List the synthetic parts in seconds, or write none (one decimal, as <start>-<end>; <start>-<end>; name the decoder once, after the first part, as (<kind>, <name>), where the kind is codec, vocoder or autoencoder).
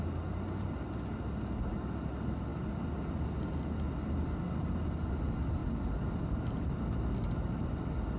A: none